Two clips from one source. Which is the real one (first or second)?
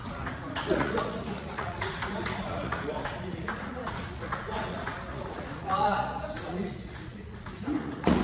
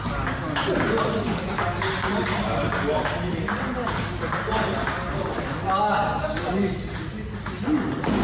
second